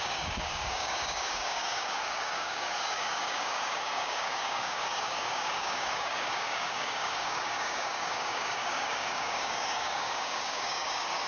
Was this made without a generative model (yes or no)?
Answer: no